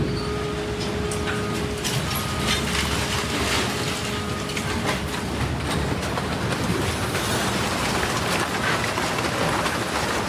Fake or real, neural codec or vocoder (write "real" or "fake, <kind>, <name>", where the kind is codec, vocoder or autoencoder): real